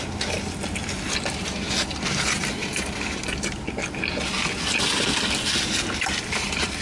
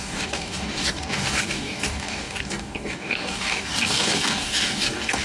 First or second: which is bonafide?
first